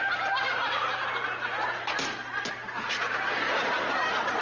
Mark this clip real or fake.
real